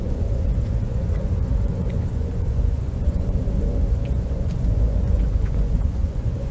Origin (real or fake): fake